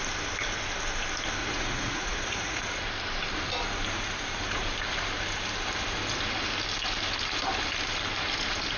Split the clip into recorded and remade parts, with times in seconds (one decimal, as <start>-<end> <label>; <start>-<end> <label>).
0.0-1.4 recorded; 1.4-2.6 remade; 2.6-8.8 recorded